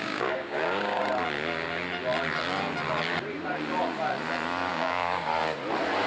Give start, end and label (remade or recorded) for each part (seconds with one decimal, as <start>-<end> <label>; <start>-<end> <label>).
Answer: 0.0-1.0 remade; 1.0-4.7 recorded; 4.7-5.3 remade; 5.3-6.1 recorded